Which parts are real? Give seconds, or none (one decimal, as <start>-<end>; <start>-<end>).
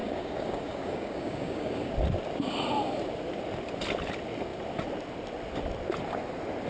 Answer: 1.9-6.7